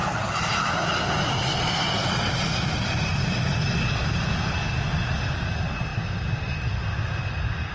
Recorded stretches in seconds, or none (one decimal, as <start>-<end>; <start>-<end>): 0.0-7.7